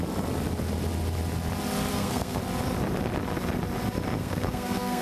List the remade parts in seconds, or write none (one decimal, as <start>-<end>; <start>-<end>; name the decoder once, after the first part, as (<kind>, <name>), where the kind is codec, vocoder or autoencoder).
1.9-2.4 (codec, SNAC); 4.2-5.0